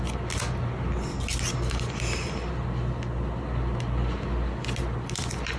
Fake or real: real